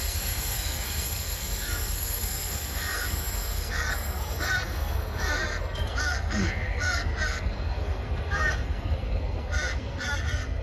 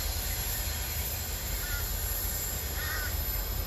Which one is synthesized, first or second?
first